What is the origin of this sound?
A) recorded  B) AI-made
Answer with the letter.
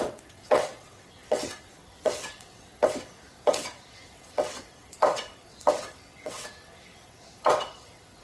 B